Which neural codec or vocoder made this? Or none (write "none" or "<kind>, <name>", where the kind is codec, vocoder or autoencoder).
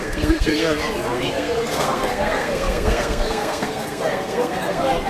codec, SNAC